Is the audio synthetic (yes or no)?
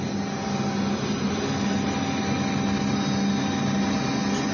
no